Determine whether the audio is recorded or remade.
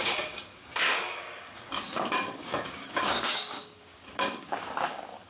remade